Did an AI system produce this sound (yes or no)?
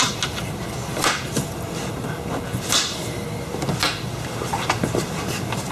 no